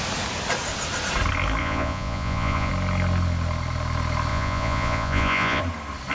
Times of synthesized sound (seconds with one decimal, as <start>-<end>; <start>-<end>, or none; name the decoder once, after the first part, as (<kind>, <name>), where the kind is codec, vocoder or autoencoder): 1.6-2.7 (vocoder, Vocos); 4.3-5.6